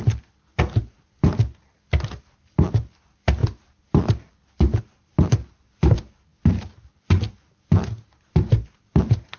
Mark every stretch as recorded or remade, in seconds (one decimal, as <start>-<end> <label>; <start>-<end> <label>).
0.0-9.4 recorded